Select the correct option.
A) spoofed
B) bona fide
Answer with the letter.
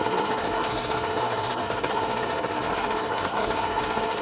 A